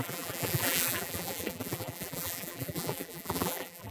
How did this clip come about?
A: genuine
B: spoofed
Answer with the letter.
B